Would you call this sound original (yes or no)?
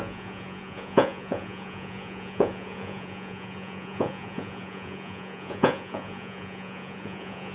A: no